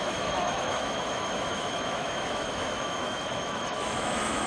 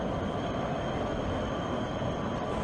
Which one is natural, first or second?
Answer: second